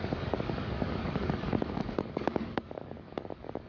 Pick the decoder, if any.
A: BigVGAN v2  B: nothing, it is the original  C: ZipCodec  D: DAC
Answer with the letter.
D